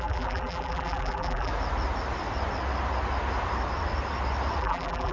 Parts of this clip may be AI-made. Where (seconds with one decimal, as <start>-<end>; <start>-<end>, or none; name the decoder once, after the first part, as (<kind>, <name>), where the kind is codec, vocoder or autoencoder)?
0.0-1.5 (vocoder, BigVGAN v2); 4.6-5.1